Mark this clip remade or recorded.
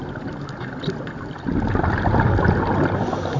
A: recorded